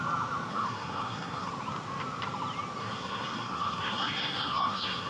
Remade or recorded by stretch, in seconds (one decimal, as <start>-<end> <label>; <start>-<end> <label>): 0.0-0.5 recorded; 0.5-1.5 remade; 1.5-2.8 recorded; 2.8-5.1 remade